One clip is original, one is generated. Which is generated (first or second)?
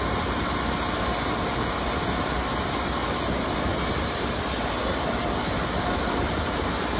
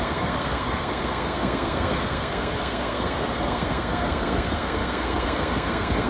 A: second